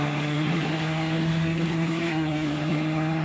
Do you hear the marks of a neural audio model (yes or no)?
yes